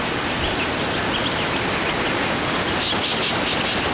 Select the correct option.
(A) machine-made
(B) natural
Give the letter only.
B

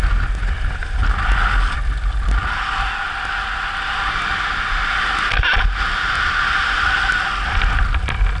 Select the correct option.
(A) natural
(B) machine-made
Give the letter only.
A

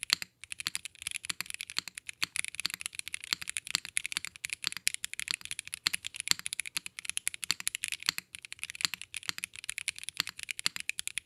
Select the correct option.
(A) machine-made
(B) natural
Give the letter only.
B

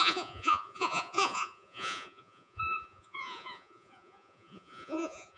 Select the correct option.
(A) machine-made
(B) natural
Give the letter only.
A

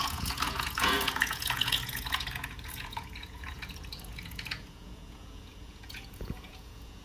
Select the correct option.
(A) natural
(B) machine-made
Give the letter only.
B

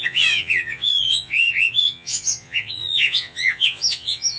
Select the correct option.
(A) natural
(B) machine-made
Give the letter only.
B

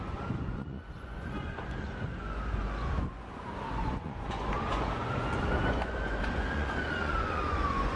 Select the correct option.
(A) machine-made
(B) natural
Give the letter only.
A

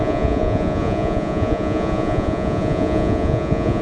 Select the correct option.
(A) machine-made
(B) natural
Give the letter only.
A